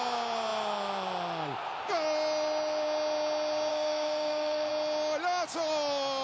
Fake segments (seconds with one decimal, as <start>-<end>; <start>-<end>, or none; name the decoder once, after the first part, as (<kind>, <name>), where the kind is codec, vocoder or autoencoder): 3.7-4.7 (codec, DAC)